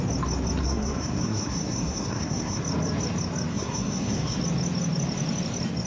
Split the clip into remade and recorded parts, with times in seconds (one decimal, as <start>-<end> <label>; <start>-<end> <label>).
0.0-0.6 recorded; 0.6-2.6 remade; 2.6-3.5 recorded; 3.5-4.4 remade; 4.4-5.9 recorded